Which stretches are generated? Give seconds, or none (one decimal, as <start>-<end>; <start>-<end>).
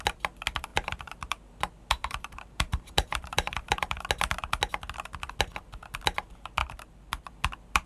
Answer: 0.7-1.5; 2.0-4.0